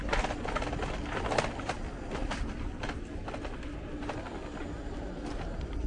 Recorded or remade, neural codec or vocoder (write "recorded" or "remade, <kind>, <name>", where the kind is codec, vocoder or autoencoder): recorded